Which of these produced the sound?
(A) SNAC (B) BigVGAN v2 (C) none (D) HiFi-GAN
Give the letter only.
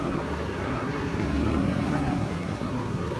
A